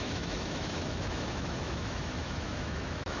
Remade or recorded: remade